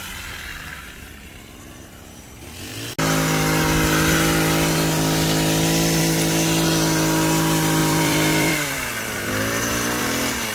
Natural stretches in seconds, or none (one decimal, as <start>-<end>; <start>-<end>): 0.0-0.5; 1.6-7.8; 9.3-10.5